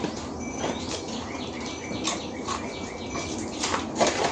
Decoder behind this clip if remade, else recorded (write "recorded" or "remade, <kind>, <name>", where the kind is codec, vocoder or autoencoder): recorded